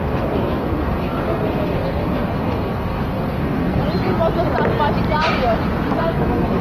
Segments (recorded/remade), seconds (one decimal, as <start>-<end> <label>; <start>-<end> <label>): 0.0-3.8 remade; 3.8-6.0 recorded; 6.0-6.6 remade

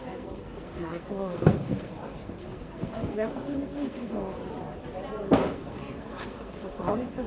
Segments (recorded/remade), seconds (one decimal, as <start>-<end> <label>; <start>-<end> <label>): 0.0-4.4 remade; 4.4-5.2 recorded; 5.2-7.3 remade

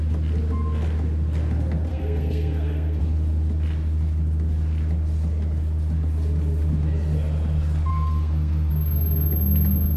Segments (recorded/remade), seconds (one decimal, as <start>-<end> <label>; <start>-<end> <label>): 0.0-1.9 recorded; 1.9-3.0 remade; 3.0-7.9 recorded; 7.9-8.7 remade; 8.7-10.0 recorded

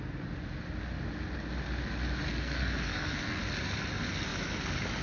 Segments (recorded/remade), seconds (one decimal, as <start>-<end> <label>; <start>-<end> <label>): 0.0-2.3 recorded; 2.3-3.4 remade; 3.4-5.0 recorded

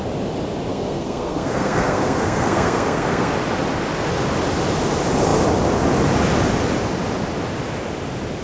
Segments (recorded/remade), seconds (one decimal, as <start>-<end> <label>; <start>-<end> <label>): 0.0-0.7 recorded; 0.7-3.3 remade; 3.3-8.4 recorded

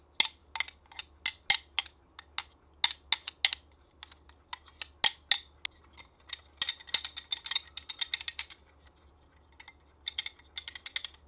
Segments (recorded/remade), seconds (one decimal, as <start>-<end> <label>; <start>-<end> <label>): 0.0-11.3 recorded

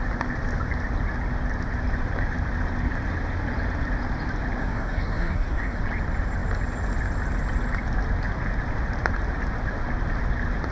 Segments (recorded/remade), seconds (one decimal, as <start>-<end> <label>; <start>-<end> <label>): 0.0-4.6 recorded; 4.6-5.8 remade; 5.8-10.7 recorded